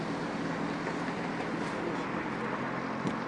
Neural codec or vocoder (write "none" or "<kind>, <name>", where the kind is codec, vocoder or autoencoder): none